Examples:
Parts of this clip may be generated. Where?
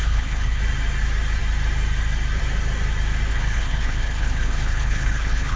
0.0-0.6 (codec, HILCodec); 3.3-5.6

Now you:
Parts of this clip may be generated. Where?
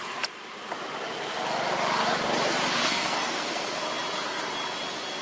2.8-3.8 (codec, SNAC)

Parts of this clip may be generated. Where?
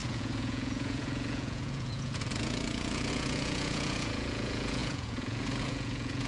0.0-6.3 (vocoder, Vocos)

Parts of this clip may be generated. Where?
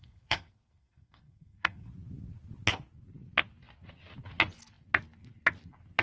0.0-1.9 (codec, SNAC)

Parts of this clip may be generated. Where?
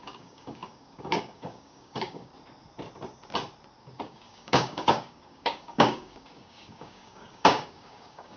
0.0-2.3 (codec, DAC); 3.8-8.4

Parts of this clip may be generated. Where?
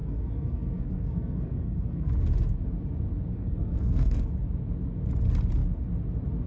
0.0-2.1 (codec, SNAC); 3.3-4.2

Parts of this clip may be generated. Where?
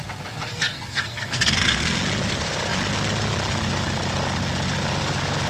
0.5-2.0 (codec, SNAC)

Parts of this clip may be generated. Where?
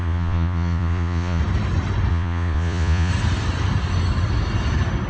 0.0-1.4 (vocoder, Vocos); 2.1-3.1